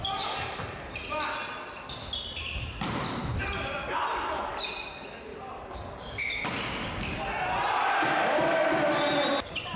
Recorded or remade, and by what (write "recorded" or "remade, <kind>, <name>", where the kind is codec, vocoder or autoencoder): recorded